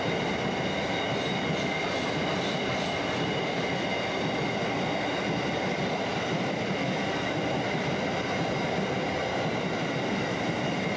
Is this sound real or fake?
real